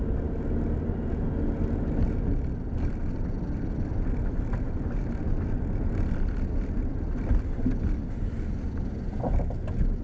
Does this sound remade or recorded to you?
recorded